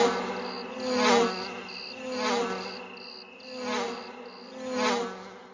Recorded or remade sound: recorded